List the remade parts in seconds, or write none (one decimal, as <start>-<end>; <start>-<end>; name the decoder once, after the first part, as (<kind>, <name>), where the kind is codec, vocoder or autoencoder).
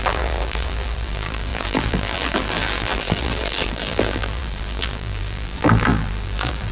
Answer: 0.0-6.7 (vocoder, BigVGAN v2)